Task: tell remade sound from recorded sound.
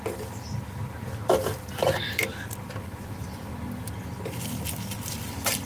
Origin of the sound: recorded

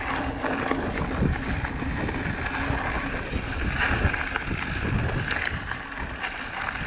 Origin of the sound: recorded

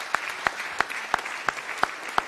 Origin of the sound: recorded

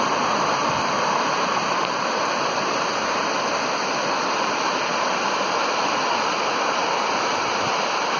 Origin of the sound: recorded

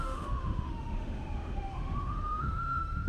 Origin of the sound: remade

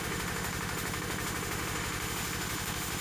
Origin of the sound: remade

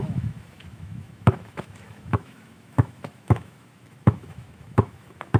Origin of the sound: remade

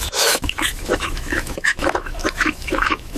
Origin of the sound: remade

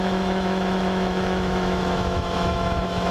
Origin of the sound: remade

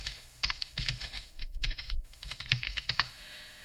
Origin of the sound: remade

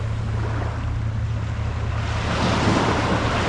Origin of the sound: recorded